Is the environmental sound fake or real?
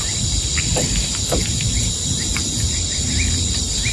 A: real